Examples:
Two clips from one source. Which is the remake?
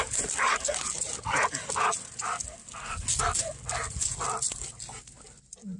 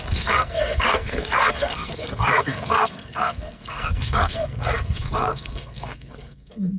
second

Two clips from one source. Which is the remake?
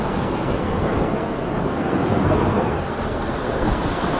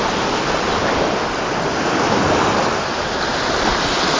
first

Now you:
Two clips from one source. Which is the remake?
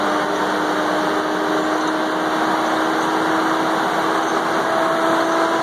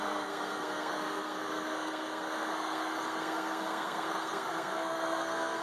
second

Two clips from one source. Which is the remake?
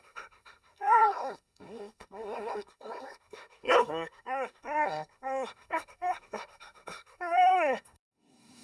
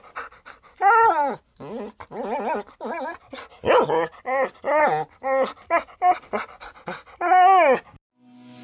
first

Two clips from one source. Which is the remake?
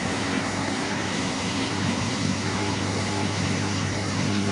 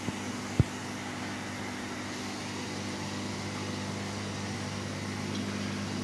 first